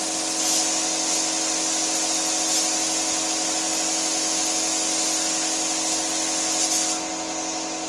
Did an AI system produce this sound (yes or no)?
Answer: no